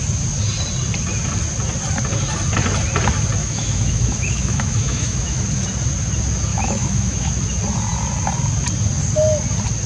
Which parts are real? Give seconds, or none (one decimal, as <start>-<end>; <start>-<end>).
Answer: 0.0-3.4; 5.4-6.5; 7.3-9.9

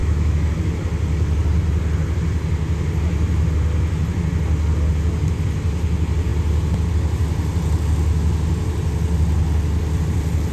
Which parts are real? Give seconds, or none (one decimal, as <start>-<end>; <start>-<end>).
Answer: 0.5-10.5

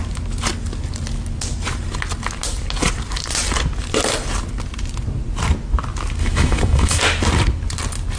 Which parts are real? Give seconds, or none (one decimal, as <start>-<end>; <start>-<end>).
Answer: 0.0-6.2; 7.0-8.2

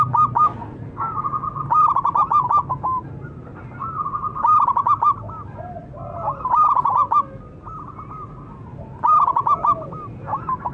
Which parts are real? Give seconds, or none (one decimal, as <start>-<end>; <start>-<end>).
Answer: 0.0-10.7

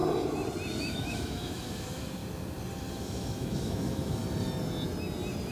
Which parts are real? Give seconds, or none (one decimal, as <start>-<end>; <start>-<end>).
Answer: 0.0-0.8; 2.2-2.9; 4.2-5.5

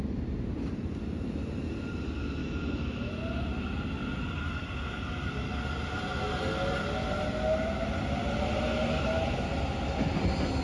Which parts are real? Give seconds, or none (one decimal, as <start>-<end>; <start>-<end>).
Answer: 0.0-2.4; 3.1-10.6

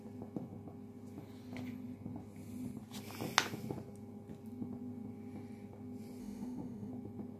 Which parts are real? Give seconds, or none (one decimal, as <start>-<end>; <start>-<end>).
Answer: 0.0-6.2; 6.9-7.4